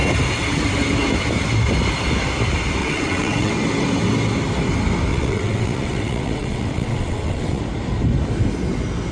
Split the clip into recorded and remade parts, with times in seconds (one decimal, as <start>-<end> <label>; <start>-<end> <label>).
0.0-2.8 recorded; 2.8-3.5 remade; 3.5-5.1 recorded; 5.1-7.6 remade; 7.6-9.1 recorded